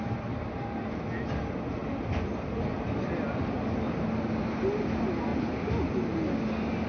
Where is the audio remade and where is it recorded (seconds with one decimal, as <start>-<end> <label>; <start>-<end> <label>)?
0.0-1.8 recorded; 1.8-3.1 remade; 3.1-5.3 recorded; 5.3-5.9 remade; 5.9-6.9 recorded